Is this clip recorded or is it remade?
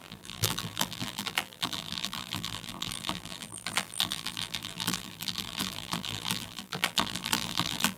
remade